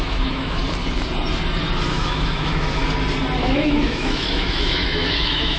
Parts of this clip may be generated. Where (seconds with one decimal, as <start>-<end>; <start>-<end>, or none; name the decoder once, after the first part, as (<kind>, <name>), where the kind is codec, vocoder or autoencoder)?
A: 0.0-0.6 (autoencoder, DAC-VAE); 1.9-2.8; 3.4-5.6